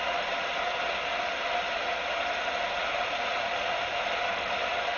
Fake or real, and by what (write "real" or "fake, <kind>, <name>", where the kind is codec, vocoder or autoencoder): real